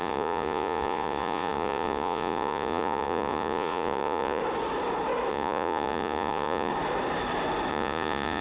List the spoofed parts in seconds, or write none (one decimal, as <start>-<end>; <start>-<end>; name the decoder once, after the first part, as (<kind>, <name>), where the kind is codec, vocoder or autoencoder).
0.0-4.4 (vocoder, Vocos); 5.3-6.7; 7.7-8.4